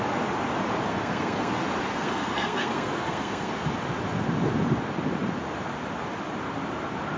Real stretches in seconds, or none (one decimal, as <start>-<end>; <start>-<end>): 0.0-0.9; 1.5-1.9; 3.5-7.2